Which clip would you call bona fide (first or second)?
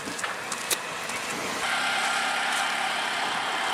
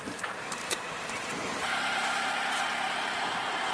first